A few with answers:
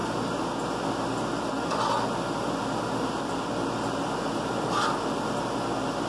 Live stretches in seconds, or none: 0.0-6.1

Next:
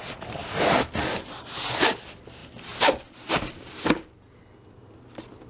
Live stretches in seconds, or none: 0.0-0.4; 1.7-5.5